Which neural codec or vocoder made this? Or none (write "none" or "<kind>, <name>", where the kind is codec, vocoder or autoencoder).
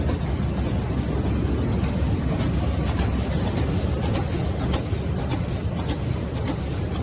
none